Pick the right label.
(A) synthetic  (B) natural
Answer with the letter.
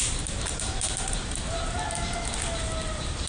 B